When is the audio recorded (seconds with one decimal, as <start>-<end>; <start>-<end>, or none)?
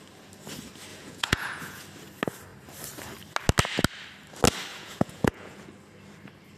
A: 0.0-0.9; 1.8-4.7; 5.7-6.6